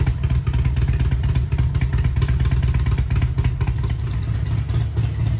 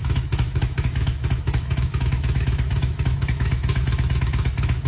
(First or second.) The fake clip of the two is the second